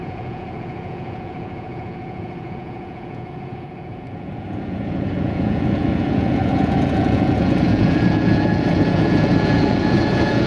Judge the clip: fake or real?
fake